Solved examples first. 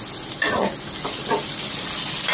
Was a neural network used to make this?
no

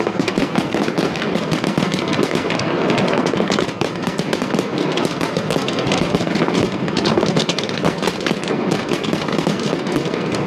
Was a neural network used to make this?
yes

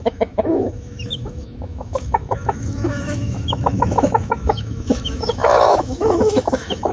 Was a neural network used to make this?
yes